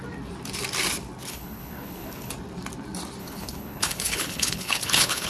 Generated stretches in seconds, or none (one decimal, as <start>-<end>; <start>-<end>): 1.3-2.3; 3.2-5.3

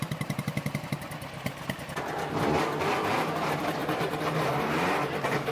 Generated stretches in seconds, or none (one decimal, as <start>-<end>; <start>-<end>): none